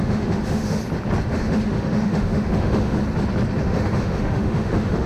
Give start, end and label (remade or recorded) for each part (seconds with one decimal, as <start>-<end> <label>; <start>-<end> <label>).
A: 0.0-0.8 remade; 0.8-1.3 recorded; 1.3-3.0 remade; 3.0-3.6 recorded; 3.6-5.1 remade